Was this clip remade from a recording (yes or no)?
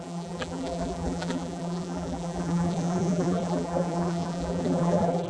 yes